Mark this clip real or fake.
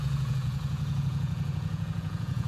fake